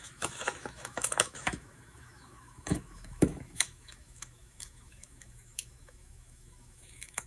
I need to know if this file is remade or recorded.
remade